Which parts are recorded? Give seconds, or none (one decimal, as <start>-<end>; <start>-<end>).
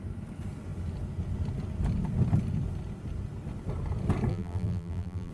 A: 0.0-4.3